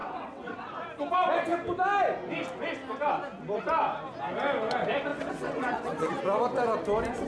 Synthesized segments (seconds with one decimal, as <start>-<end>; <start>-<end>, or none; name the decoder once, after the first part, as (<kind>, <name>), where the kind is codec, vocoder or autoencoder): 0.0-0.7 (vocoder, WaveNeXt); 5.1-6.1